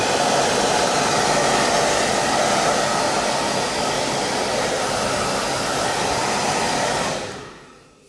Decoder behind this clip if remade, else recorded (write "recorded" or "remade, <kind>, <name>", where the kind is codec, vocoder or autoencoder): remade, vocoder, BigVGAN v2